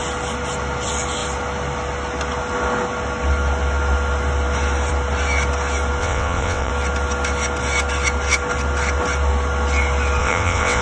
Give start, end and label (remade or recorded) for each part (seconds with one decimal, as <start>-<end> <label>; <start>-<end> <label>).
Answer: 0.0-6.0 recorded; 6.0-6.7 remade; 6.7-10.2 recorded; 10.2-10.8 remade